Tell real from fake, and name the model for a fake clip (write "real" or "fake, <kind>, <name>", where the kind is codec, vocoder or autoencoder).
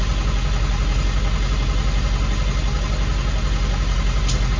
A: real